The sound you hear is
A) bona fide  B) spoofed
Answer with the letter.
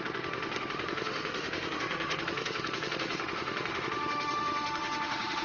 B